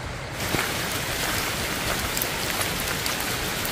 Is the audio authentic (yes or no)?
yes